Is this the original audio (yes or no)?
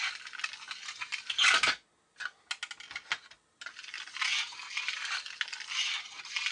yes